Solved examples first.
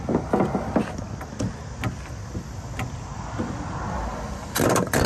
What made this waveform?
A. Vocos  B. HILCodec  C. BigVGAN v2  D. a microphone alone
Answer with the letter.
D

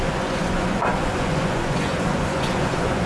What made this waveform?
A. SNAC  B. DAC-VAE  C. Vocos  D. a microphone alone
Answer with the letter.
C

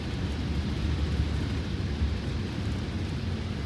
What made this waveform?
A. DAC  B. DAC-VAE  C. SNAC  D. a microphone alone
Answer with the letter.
D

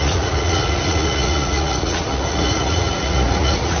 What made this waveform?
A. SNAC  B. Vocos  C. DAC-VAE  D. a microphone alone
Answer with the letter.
B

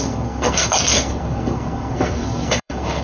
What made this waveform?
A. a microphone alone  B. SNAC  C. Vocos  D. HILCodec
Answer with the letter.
B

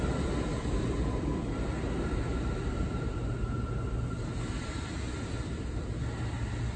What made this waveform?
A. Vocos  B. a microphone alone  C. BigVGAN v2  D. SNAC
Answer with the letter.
B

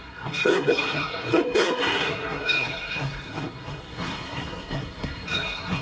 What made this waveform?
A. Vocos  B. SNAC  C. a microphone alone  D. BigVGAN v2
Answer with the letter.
B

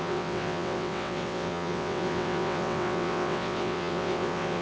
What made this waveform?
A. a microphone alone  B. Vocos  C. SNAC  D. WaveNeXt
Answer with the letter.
D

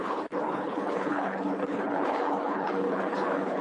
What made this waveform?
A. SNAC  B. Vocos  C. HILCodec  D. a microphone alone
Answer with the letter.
C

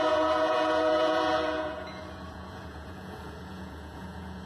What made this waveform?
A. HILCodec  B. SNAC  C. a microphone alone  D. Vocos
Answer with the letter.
D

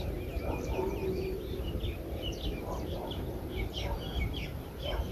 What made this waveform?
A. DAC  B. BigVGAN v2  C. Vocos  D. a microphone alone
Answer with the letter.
B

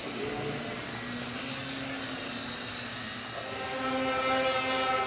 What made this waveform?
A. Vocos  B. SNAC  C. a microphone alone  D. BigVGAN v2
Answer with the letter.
C